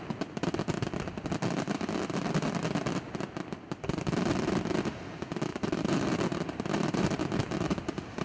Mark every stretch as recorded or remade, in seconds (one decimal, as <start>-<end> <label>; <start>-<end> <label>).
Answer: 0.0-5.5 recorded; 5.5-7.2 remade; 7.2-8.2 recorded